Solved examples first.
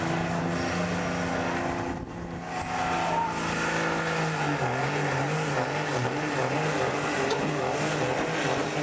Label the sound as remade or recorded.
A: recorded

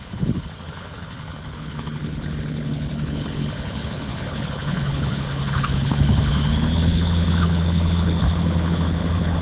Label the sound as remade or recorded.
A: remade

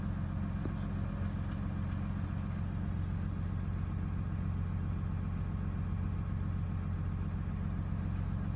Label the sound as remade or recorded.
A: recorded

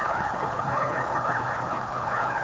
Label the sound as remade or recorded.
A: remade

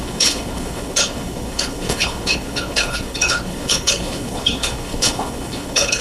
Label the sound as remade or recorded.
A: remade